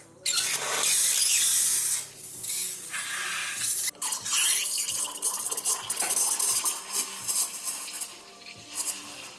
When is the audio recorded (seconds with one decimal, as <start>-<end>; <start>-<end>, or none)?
0.0-9.4